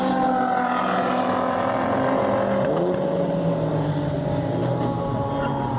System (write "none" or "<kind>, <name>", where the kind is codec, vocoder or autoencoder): none